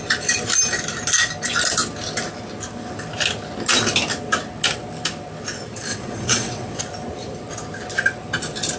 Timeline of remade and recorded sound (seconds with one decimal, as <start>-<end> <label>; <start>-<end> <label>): 0.0-5.9 recorded; 5.9-6.8 remade; 6.8-8.8 recorded